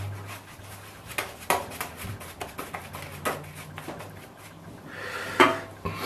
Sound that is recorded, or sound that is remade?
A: recorded